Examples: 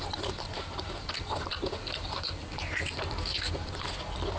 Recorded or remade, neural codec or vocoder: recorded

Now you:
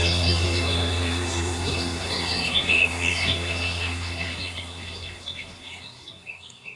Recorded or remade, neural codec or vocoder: remade, codec, SNAC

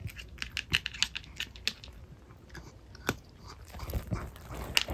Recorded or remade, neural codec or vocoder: recorded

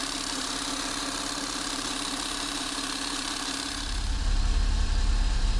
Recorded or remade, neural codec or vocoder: remade, vocoder, BigVGAN v2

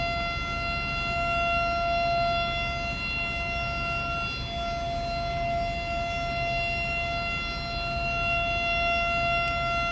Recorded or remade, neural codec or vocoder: recorded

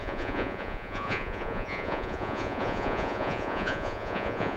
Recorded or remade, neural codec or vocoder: remade, vocoder, Vocos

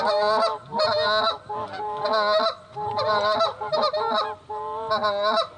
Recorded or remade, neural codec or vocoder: recorded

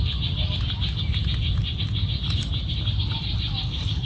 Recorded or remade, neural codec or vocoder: recorded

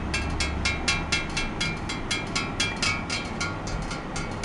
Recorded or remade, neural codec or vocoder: recorded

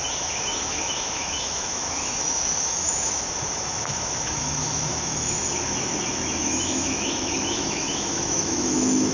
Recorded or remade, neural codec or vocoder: remade, autoencoder, DAC-VAE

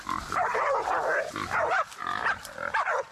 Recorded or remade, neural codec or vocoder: remade, vocoder, BigVGAN v2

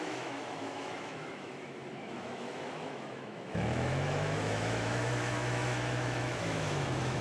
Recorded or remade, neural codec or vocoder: remade, autoencoder, DAC-VAE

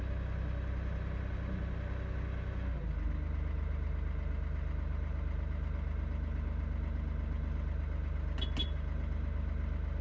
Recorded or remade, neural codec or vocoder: recorded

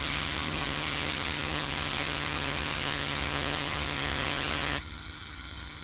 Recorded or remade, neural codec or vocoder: remade, vocoder, HiFi-GAN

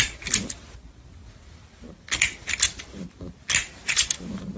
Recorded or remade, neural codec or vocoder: recorded